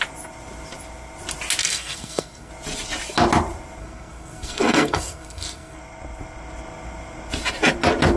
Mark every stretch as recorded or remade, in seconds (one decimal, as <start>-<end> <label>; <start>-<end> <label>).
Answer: 0.0-1.6 recorded; 1.6-2.5 remade; 2.5-3.8 recorded; 3.8-5.8 remade; 5.8-8.2 recorded